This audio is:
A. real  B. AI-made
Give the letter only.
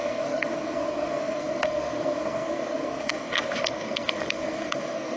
B